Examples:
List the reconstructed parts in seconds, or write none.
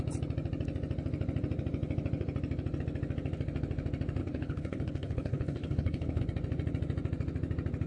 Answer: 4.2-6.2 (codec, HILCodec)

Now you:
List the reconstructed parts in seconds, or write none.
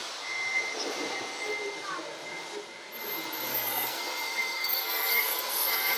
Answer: 3.5-6.0 (codec, SNAC)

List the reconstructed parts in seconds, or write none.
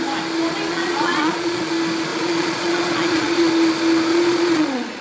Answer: 0.7-1.7 (vocoder, Vocos); 2.1-3.5; 4.1-5.0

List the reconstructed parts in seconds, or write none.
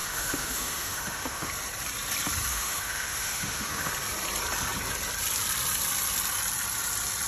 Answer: 0.0-1.5 (autoencoder, DAC-VAE); 2.5-3.9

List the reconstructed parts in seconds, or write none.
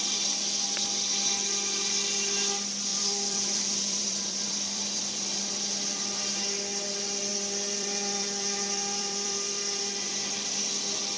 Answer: 2.9-5.4 (vocoder, BigVGAN v2); 7.3-9.8